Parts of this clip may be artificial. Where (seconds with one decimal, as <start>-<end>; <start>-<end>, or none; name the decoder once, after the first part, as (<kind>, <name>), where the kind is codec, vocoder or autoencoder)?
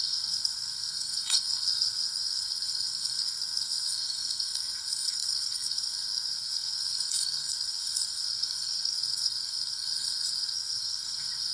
0.0-11.5 (codec, SNAC)